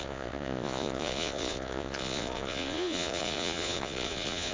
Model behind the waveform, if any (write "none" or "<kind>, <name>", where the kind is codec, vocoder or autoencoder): vocoder, Vocos